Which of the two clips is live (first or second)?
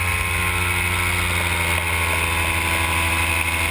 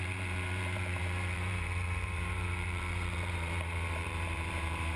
first